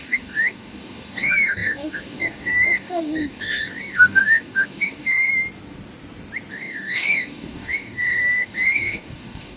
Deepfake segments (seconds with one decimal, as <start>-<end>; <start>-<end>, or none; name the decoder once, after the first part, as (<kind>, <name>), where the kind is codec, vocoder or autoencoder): 0.0-5.3 (codec, DAC); 6.5-9.6